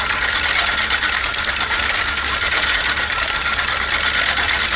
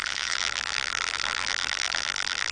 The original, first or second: first